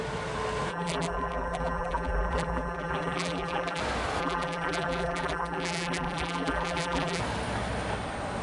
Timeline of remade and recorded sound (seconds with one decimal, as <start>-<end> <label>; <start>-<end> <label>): 0.0-0.7 recorded; 0.7-3.8 remade; 3.8-4.2 recorded; 4.2-7.2 remade; 7.2-8.4 recorded